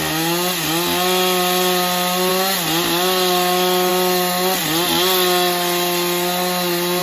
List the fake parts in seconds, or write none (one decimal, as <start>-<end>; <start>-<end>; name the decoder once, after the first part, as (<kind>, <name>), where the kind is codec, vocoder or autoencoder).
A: none